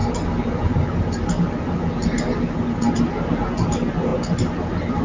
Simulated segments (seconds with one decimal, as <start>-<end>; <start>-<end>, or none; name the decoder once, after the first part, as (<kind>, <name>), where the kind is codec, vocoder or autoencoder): none

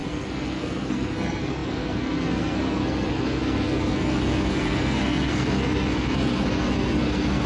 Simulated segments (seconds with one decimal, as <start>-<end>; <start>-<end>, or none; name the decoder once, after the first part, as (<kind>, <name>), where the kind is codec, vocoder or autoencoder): 0.0-7.5 (codec, SNAC)

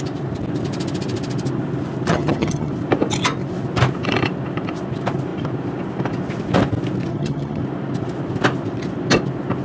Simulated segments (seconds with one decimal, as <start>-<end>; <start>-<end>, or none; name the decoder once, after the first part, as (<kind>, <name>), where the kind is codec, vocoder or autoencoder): 2.1-2.7 (vocoder, HiFi-GAN); 7.1-7.6

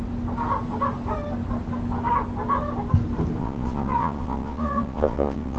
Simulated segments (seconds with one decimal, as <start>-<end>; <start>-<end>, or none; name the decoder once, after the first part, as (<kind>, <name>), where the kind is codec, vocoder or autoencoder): 3.4-5.6 (vocoder, Vocos)

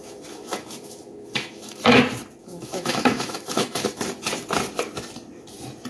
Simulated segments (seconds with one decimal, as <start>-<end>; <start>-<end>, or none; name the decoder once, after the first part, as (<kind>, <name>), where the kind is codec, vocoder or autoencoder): 0.0-2.0 (autoencoder, DAC-VAE); 2.4-4.0

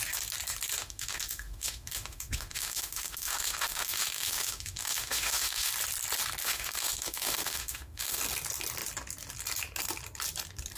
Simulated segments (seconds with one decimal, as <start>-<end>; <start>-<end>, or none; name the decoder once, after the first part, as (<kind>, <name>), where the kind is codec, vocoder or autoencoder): 0.8-5.7 (autoencoder, DAC-VAE); 6.4-8.2